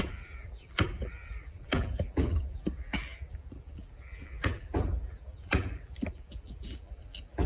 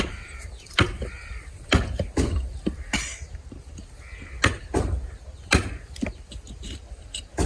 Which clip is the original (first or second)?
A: second